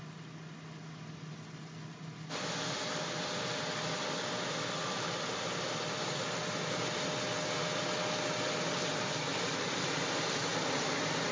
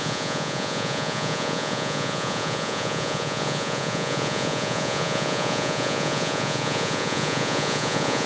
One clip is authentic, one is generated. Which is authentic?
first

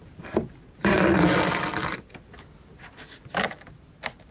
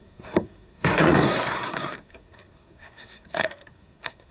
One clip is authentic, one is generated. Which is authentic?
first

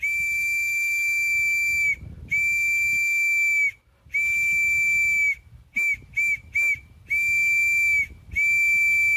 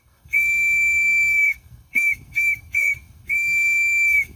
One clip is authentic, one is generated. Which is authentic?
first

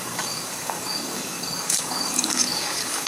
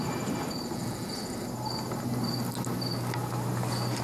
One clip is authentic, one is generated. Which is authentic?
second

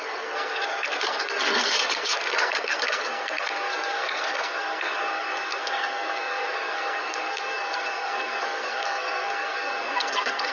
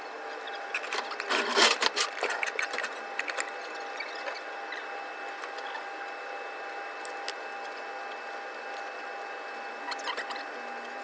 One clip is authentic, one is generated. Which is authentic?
second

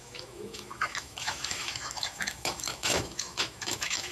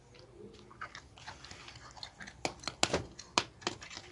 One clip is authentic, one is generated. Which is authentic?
second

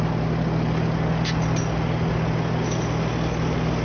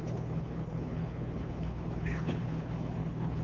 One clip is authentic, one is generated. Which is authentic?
first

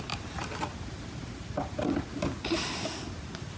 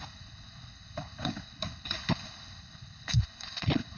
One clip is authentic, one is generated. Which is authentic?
first